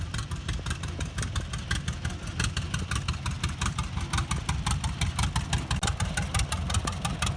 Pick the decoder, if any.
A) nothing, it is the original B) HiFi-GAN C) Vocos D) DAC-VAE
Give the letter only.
A